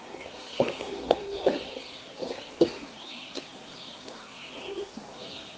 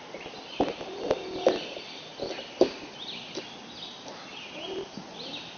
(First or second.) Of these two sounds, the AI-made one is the first